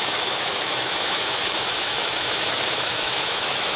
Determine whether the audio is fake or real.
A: fake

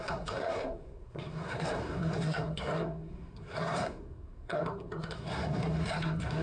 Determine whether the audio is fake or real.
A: fake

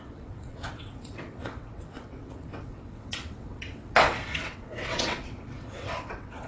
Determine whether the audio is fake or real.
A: fake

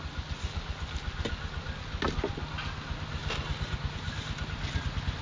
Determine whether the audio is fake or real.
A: real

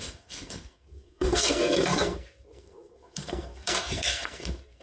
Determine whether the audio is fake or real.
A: fake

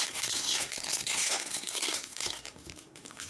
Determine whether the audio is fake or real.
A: fake